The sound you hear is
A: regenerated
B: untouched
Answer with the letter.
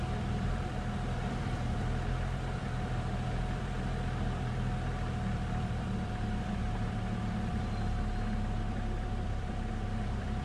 A